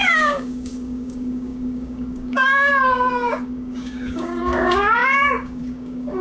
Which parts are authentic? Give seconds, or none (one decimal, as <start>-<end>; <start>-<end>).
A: none